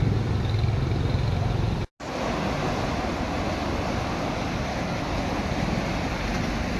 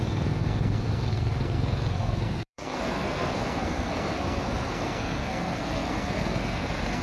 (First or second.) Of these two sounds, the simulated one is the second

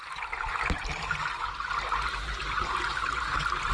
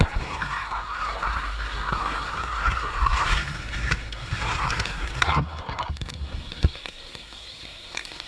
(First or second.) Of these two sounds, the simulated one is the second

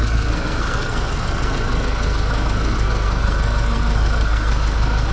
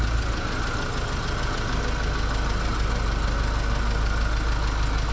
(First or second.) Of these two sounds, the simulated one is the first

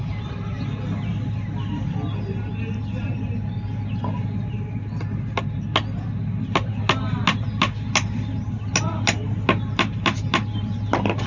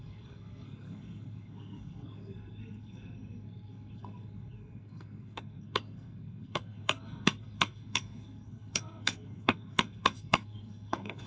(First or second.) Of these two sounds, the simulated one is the second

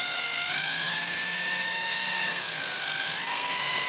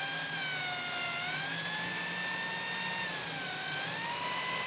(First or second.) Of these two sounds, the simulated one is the first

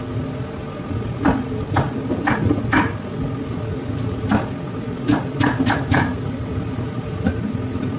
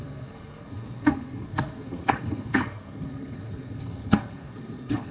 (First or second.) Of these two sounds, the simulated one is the second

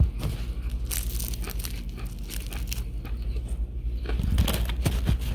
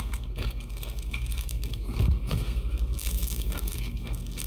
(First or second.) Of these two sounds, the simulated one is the second